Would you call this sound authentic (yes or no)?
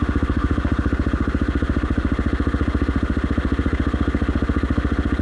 no